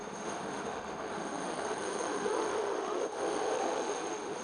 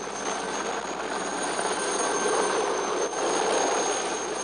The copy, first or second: first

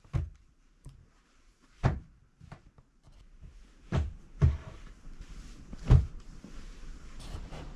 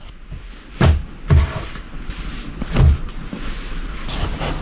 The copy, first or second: first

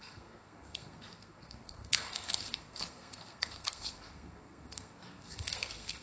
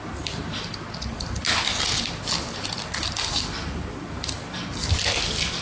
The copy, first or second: first